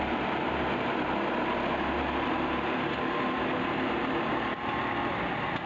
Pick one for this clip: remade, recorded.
recorded